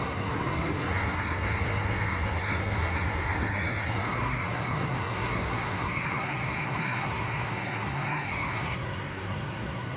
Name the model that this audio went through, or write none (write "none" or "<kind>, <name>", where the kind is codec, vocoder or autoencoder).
codec, SNAC